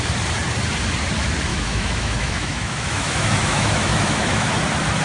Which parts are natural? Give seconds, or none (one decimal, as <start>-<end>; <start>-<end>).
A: 0.0-1.5; 4.5-5.0